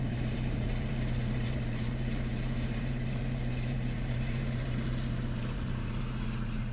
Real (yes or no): no